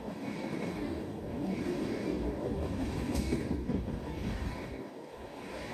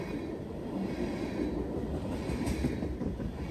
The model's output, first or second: first